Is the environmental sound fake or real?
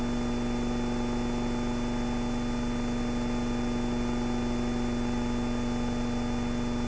real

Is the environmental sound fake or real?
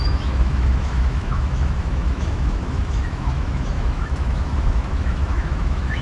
fake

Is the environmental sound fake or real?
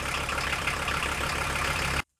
fake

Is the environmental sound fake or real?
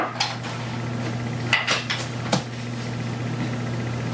real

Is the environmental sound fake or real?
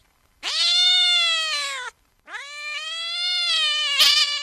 real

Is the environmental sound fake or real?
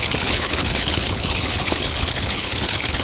fake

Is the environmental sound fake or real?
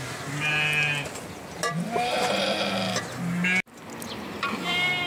real